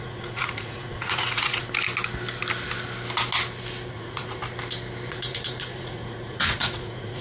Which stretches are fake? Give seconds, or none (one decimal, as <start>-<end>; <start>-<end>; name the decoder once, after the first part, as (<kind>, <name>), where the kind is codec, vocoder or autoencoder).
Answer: 0.0-1.6 (vocoder, Vocos); 3.9-4.4; 5.1-7.2

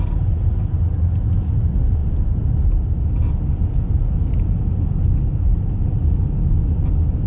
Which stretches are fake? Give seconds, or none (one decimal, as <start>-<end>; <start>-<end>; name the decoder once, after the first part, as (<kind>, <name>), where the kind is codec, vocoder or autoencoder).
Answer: none

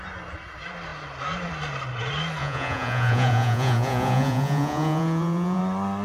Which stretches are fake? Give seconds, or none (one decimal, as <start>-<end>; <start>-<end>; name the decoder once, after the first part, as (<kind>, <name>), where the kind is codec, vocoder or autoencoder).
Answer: 2.4-5.6 (vocoder, Vocos)